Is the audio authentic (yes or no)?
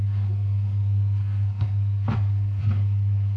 no